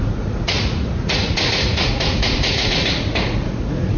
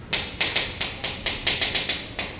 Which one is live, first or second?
second